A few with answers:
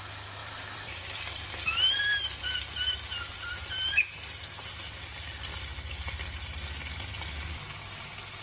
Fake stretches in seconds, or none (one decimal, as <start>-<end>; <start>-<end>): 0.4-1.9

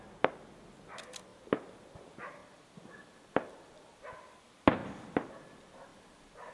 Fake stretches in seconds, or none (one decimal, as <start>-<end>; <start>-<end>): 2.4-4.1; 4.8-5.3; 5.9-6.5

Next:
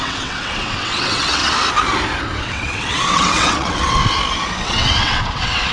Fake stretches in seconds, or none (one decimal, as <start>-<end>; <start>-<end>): 0.0-1.4; 2.4-4.0; 4.6-5.7

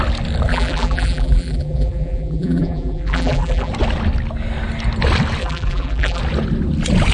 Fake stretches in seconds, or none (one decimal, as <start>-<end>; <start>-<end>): 0.5-3.7; 5.4-6.2

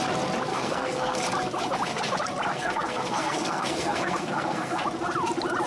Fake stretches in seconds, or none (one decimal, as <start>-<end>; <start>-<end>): 0.5-1.2; 2.5-4.8